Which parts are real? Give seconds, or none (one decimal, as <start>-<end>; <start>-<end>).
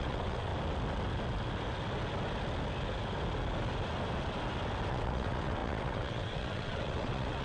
0.5-4.9